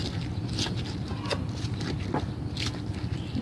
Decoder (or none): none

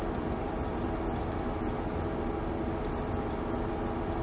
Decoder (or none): none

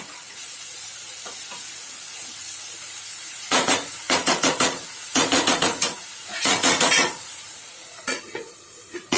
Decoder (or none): vocoder, Vocos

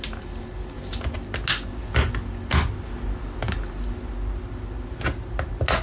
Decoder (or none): none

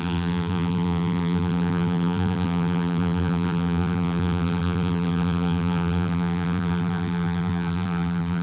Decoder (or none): vocoder, BigVGAN v2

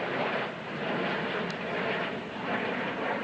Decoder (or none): none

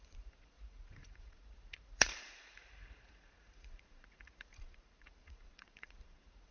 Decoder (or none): vocoder, Vocos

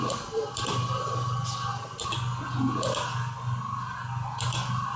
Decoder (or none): none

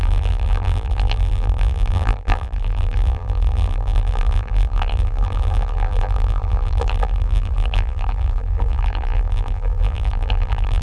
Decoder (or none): vocoder, BigVGAN v2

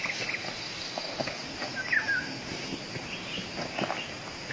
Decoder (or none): none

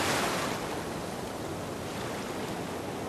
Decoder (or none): none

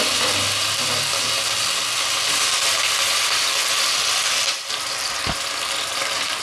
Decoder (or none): none